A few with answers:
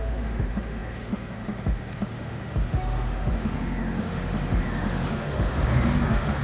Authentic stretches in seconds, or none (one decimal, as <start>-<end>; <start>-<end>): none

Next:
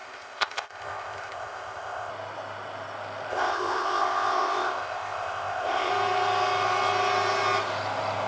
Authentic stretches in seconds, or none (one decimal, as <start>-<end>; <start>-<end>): 2.1-3.3; 5.9-8.3

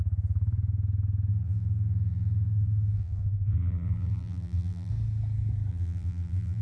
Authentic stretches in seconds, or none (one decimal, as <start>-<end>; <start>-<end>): 0.0-1.3; 4.9-5.7